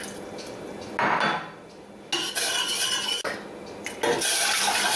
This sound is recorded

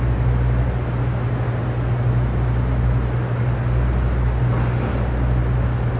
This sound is recorded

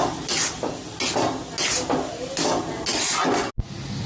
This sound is recorded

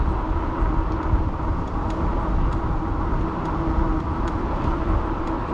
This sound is recorded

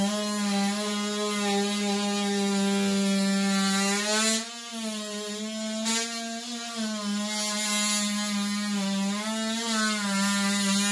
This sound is recorded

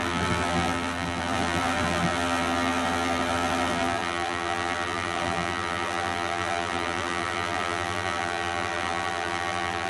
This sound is remade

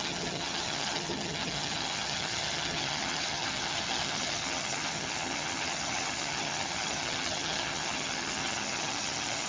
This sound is remade